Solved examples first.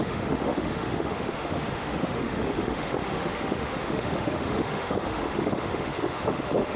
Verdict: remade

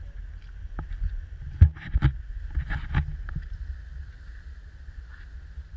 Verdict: recorded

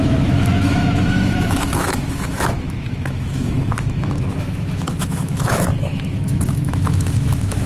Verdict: remade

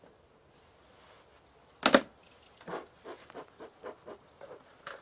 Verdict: recorded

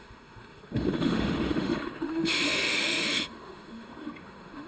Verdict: remade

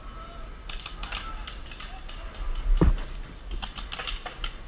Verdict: recorded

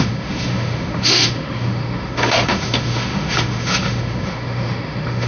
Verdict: remade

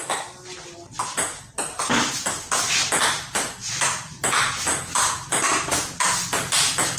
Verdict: recorded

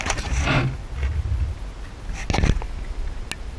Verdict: recorded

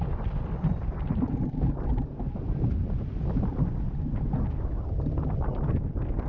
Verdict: recorded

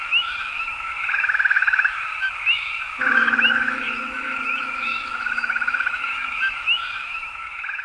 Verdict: remade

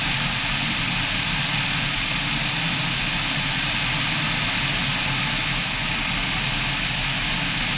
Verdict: recorded